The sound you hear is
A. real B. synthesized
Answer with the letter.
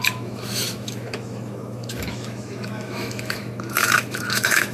B